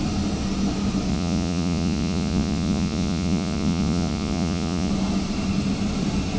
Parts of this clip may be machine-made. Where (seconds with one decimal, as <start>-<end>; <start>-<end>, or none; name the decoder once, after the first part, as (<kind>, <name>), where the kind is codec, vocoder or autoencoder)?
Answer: 1.1-4.9 (vocoder, Vocos)